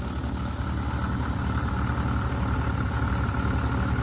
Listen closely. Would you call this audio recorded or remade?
recorded